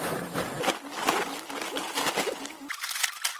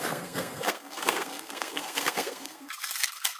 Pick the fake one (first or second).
second